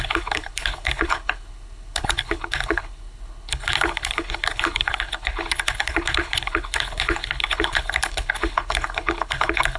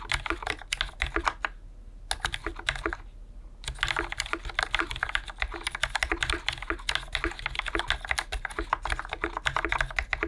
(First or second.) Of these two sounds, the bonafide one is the second